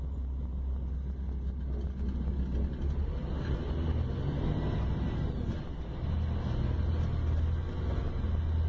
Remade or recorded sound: recorded